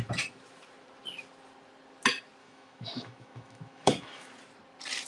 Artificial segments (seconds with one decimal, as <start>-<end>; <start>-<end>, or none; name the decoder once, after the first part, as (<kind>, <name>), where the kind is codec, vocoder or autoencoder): 2.4-4.3 (autoencoder, DAC-VAE)